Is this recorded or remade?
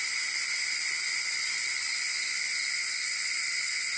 recorded